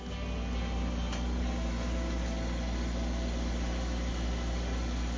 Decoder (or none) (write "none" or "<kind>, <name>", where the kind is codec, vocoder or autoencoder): none